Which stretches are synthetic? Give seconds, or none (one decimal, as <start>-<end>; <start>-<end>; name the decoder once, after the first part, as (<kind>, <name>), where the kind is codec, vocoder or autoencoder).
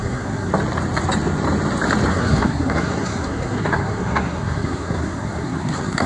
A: 0.0-0.5 (codec, SNAC); 2.1-6.1